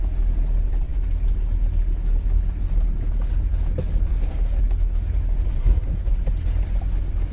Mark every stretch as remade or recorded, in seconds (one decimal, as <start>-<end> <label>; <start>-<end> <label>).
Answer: 0.0-4.1 recorded; 4.1-4.6 remade; 4.6-5.6 recorded; 5.6-6.1 remade; 6.1-7.3 recorded